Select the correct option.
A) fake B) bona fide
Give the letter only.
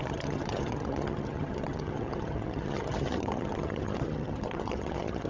A